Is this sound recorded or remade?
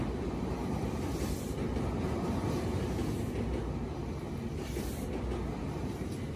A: recorded